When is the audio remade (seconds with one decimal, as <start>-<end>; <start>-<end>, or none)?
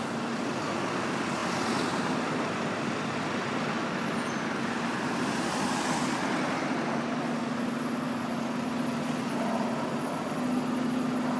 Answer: none